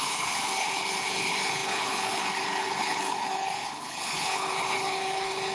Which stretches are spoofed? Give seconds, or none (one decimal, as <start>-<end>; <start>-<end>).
0.0-5.5